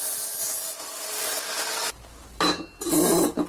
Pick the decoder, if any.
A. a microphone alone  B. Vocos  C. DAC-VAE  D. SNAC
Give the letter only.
A